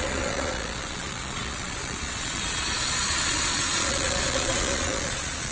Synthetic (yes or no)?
yes